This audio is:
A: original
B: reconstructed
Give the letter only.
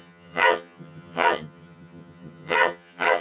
B